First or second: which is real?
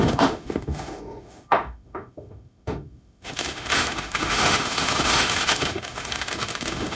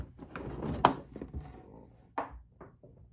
second